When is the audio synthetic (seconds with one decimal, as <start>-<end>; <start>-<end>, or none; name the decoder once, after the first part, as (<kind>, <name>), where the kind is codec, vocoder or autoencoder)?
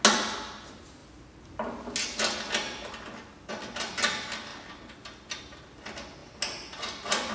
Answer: none